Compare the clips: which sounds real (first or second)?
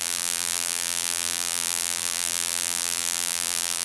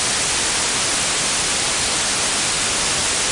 second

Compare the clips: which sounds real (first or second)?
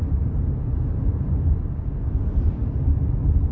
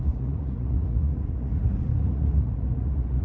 first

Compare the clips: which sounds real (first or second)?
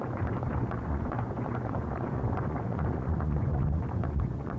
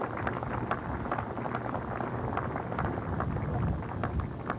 second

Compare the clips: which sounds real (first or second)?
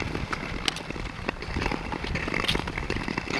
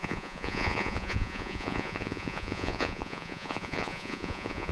first